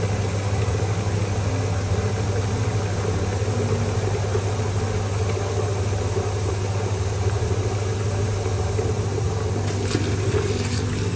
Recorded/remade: recorded